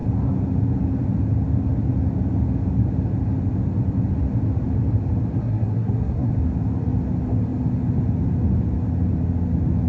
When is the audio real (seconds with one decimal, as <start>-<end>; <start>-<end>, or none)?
0.0-5.4; 6.3-9.9